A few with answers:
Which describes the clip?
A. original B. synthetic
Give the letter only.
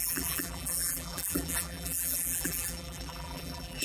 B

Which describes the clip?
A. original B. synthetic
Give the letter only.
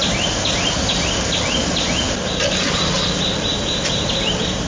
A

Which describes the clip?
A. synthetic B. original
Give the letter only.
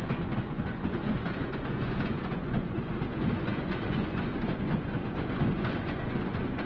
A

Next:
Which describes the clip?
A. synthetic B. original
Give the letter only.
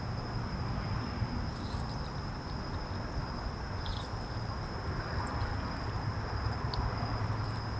B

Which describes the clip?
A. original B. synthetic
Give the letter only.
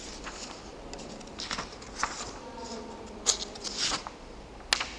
A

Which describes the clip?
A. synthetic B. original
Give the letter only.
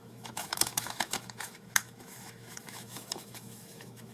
A